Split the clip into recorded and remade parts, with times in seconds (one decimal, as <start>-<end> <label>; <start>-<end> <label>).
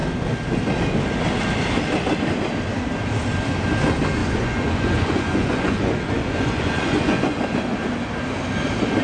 0.0-4.2 recorded; 4.2-7.4 remade; 7.4-9.0 recorded